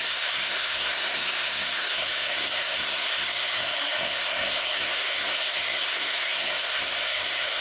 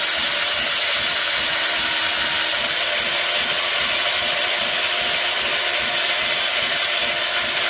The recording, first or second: second